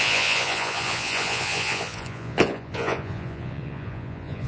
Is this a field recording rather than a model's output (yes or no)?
no